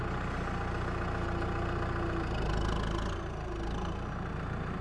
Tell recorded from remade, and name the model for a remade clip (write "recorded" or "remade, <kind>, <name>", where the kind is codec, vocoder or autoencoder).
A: recorded